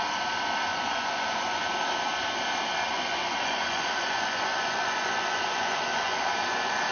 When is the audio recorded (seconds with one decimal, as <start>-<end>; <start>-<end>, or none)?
0.0-0.7; 1.6-2.9; 6.2-6.9